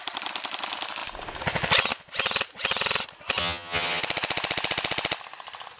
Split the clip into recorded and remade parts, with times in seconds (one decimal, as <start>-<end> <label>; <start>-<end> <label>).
0.0-3.4 recorded; 3.4-4.0 remade; 4.0-5.8 recorded